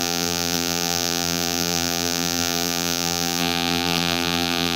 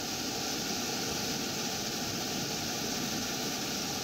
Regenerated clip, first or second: first